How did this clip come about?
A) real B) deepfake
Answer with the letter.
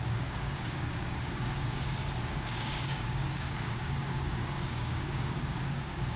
B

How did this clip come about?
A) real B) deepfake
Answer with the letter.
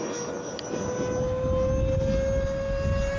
A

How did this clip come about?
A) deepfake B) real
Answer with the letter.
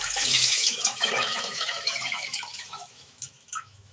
A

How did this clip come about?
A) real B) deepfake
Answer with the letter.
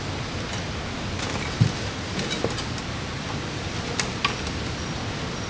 A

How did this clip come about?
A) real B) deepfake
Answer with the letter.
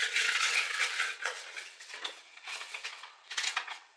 B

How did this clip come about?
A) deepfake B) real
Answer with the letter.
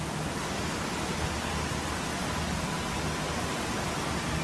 B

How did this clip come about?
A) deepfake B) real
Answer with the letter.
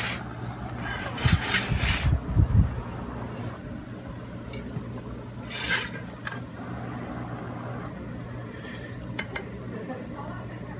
B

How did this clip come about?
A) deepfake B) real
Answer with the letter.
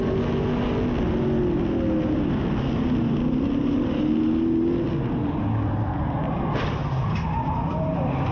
B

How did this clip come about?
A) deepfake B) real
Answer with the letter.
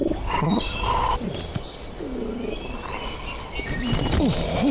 B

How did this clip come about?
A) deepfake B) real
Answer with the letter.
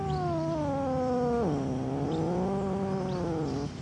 B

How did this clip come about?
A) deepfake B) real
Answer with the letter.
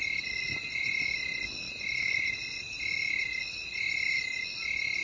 B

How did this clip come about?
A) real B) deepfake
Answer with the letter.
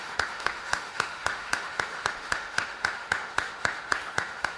B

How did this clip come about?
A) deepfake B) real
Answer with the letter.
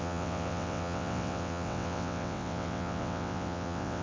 A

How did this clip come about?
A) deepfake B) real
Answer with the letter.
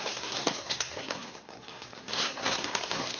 A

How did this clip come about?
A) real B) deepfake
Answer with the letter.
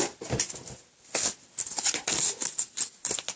A